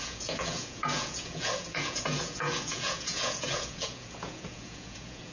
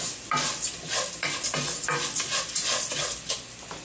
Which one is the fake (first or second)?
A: first